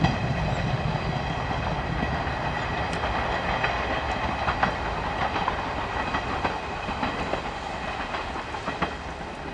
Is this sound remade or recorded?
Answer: recorded